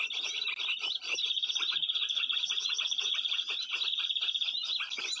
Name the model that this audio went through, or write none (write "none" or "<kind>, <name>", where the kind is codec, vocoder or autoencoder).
none